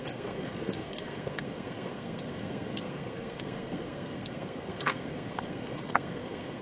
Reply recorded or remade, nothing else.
remade